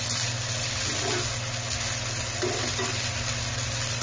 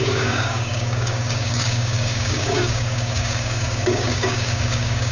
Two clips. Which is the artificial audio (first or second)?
second